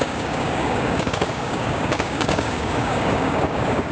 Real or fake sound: fake